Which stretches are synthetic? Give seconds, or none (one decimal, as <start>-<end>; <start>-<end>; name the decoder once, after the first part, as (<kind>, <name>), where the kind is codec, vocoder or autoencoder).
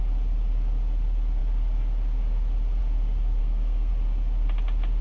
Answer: 3.4-3.9 (codec, SNAC)